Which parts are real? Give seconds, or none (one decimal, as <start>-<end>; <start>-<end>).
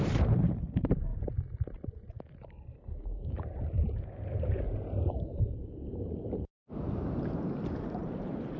1.1-3.0